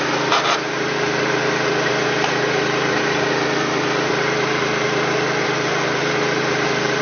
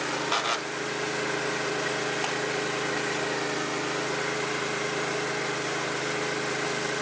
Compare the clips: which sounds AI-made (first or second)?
first